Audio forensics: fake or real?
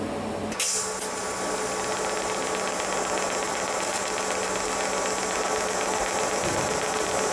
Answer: real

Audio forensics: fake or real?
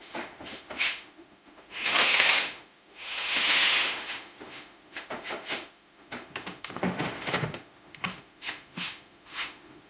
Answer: fake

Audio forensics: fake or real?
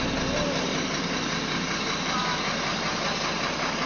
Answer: real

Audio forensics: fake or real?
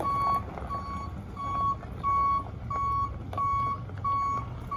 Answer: real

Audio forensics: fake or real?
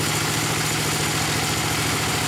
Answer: real